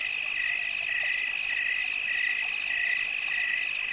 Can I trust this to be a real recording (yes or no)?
yes